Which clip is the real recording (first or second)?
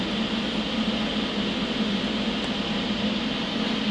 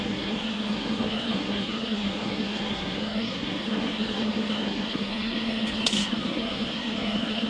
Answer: first